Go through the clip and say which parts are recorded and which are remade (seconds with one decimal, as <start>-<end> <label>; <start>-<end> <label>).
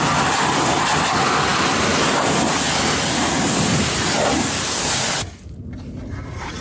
0.0-6.6 recorded